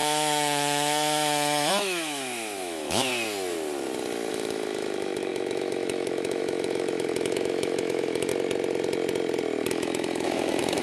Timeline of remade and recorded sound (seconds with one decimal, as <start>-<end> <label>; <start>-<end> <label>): 0.0-3.1 remade; 3.1-4.3 recorded; 4.3-8.3 remade; 8.3-9.7 recorded; 9.7-10.8 remade